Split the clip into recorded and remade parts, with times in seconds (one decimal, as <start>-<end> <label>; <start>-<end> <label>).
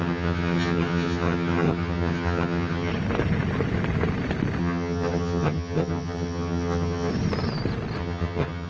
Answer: 0.0-2.9 remade; 2.9-4.6 recorded; 4.6-7.1 remade; 7.1-8.0 recorded; 8.0-8.7 remade